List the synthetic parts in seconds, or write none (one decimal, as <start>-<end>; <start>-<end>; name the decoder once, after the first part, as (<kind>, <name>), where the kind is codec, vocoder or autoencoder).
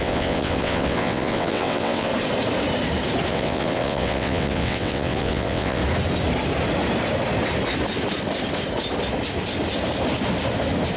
0.0-2.1 (vocoder, WaveNeXt); 3.3-5.8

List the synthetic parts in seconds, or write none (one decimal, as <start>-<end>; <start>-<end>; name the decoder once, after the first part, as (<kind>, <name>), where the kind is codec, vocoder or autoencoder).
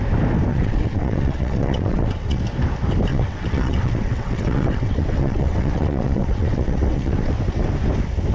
0.5-2.4 (vocoder, WaveNeXt); 3.1-7.4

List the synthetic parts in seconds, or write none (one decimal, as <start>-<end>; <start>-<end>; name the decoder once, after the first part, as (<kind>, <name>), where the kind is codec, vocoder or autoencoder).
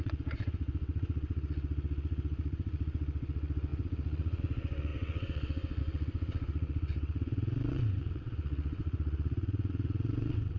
0.0-10.6 (vocoder, WaveNeXt)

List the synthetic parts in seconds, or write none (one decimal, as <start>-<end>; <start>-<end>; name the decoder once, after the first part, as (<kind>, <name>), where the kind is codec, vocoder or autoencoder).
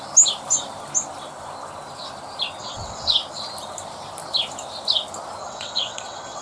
2.6-3.1 (vocoder, WaveNeXt); 5.4-6.4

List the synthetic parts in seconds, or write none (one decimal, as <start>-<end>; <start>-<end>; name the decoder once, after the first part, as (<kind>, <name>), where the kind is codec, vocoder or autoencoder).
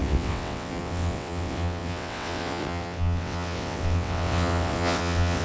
0.0-5.4 (vocoder, WaveNeXt)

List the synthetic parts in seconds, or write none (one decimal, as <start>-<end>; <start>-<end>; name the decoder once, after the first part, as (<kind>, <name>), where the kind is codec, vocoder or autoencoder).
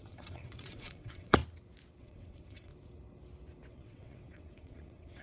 0.0-1.4 (vocoder, WaveNeXt); 2.0-2.7; 3.7-5.2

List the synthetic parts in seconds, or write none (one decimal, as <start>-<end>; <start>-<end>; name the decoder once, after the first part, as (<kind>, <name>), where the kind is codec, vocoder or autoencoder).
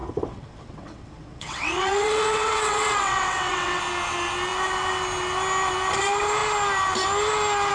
0.0-3.8 (vocoder, WaveNeXt)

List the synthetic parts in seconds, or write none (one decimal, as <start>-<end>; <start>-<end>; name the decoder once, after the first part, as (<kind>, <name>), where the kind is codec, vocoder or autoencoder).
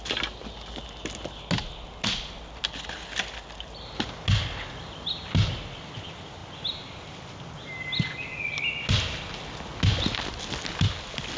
none